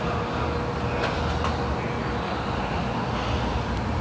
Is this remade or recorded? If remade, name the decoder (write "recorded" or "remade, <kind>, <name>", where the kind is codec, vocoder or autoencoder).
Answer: recorded